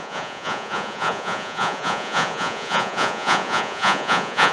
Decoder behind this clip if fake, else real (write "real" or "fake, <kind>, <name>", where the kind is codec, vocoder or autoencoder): fake, vocoder, Vocos